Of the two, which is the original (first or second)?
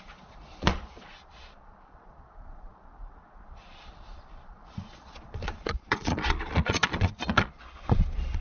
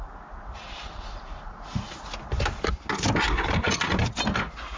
second